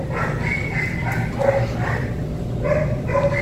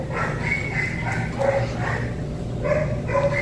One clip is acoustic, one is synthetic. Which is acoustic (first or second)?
second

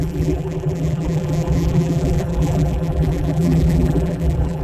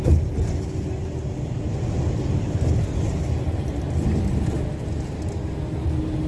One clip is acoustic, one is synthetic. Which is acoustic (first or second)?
second